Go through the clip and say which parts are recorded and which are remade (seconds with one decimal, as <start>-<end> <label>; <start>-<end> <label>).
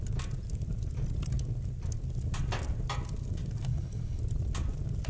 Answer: 0.0-3.7 recorded; 3.7-4.2 remade; 4.2-5.1 recorded